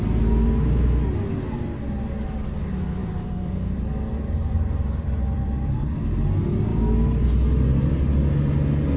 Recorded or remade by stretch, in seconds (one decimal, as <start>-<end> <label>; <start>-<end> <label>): 0.0-3.0 recorded; 3.0-5.9 remade; 5.9-9.0 recorded